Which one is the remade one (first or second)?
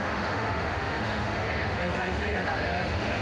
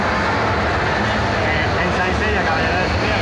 first